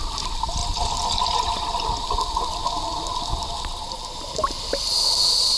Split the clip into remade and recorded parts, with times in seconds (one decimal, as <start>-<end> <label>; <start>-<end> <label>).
0.0-5.6 recorded